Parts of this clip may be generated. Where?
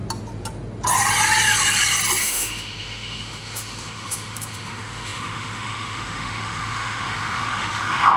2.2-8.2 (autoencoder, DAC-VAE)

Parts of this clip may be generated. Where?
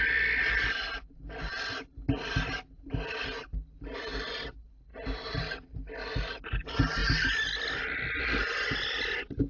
none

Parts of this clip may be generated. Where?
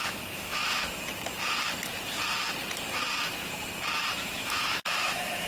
0.0-0.8 (autoencoder, DAC-VAE); 4.1-5.5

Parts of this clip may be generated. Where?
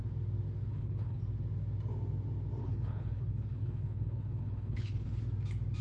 0.7-1.2 (codec, HILCodec); 2.6-5.2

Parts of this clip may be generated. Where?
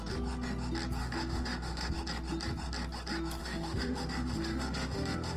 1.0-1.9 (autoencoder, DAC-VAE); 3.4-5.4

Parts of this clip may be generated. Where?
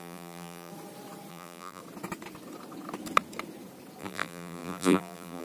0.0-0.7 (vocoder, BigVGAN v2); 1.3-1.8; 4.0-5.4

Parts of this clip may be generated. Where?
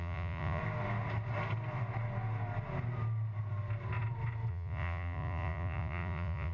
0.0-0.6 (vocoder, Vocos); 4.5-6.5